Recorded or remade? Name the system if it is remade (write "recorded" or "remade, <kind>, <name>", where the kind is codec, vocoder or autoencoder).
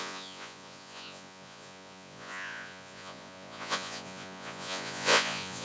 remade, vocoder, Vocos